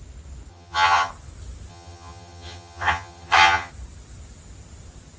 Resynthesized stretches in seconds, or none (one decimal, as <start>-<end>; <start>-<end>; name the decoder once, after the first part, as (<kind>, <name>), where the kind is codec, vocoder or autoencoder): 0.5-1.1 (vocoder, HiFi-GAN); 1.7-3.7